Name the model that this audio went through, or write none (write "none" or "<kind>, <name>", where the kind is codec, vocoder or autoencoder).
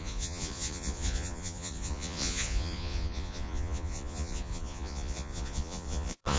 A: vocoder, Vocos